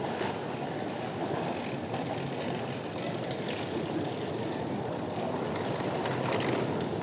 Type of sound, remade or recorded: recorded